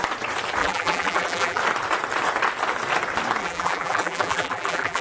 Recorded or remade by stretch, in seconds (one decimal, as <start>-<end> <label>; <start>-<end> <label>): 0.0-0.6 recorded; 0.6-1.6 remade; 1.6-3.4 recorded; 3.4-5.0 remade